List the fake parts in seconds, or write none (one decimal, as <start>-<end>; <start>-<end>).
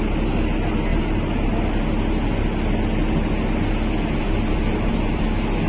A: 0.9-1.5; 4.2-5.2